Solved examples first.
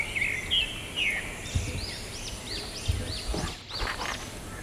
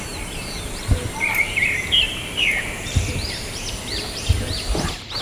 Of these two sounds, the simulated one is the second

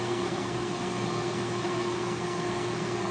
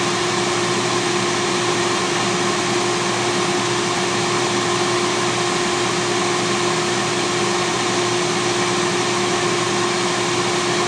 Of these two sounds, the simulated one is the first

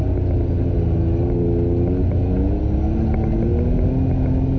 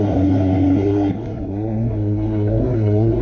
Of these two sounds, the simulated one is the second